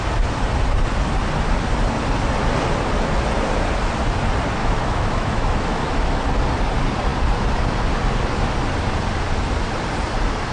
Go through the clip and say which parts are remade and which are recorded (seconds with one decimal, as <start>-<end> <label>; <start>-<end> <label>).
0.0-4.6 recorded; 4.6-6.1 remade; 6.1-10.5 recorded